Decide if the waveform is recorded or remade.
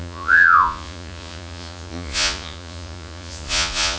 remade